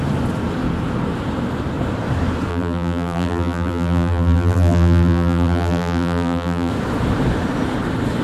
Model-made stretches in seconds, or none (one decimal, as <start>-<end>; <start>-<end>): 2.5-6.7